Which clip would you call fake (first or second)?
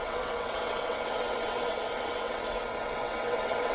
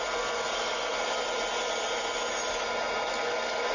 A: first